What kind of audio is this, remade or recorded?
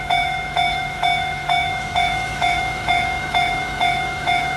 remade